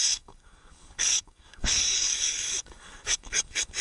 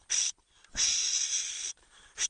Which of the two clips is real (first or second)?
second